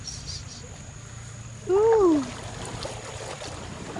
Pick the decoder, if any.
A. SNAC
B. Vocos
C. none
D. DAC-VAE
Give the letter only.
C